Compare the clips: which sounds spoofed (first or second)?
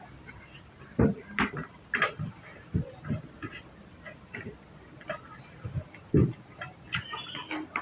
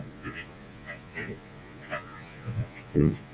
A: second